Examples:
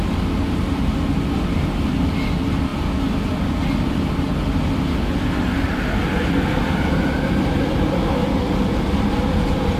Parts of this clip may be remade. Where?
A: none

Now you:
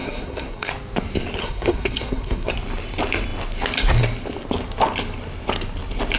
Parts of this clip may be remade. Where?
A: 0.0-0.7; 1.4-2.5

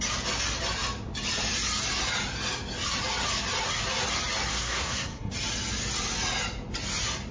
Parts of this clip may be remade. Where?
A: 4.5-5.3

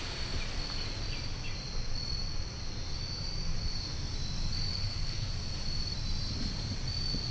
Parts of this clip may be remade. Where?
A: 4.7-5.3